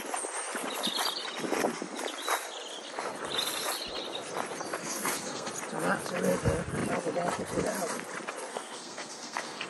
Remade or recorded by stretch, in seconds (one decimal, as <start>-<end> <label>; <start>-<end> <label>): 0.0-4.8 recorded; 4.8-5.5 remade; 5.5-8.5 recorded; 8.5-9.7 remade